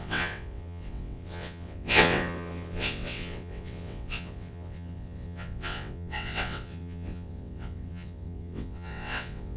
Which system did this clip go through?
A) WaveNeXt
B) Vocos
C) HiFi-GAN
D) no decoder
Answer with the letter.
A